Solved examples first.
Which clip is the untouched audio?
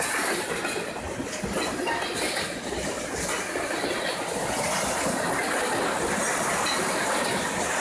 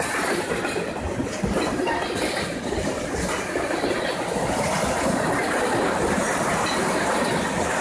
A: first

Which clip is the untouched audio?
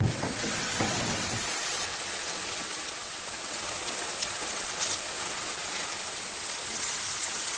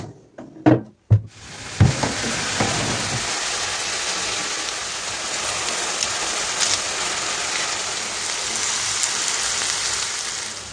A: second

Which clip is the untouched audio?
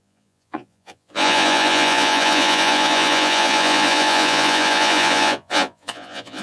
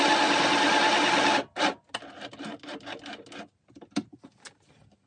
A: second